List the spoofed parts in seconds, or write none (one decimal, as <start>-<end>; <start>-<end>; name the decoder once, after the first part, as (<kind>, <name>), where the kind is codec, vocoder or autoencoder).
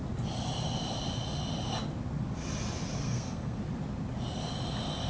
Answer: 3.0-3.6 (codec, SNAC)